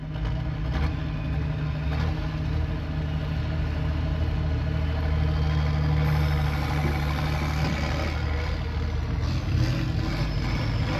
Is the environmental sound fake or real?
real